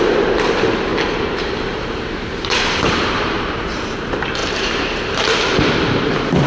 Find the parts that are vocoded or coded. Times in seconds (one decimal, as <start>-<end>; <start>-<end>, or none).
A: 0.0-4.4; 5.7-6.5